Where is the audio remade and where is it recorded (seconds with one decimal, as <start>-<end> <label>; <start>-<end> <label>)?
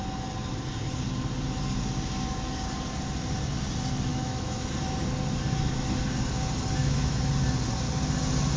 0.0-4.1 recorded; 4.1-4.7 remade; 4.7-6.8 recorded; 6.8-7.3 remade; 7.3-8.6 recorded